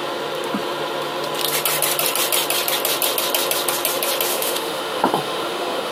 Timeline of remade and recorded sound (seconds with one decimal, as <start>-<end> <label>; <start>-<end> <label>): 0.0-4.3 recorded; 4.3-5.9 remade